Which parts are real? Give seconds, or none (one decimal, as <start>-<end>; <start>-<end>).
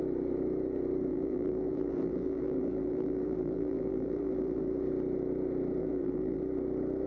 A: 0.0-1.1; 4.7-5.8; 6.4-7.1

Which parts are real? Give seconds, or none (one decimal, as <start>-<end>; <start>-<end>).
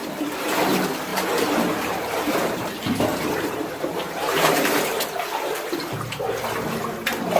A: 0.6-1.1; 2.7-3.1; 6.1-7.4